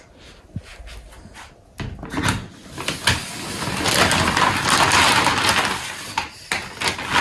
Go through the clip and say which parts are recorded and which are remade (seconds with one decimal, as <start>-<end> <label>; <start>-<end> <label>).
0.0-7.2 recorded